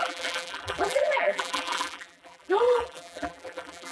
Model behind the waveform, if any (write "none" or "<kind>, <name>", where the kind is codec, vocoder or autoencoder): vocoder, BigVGAN v2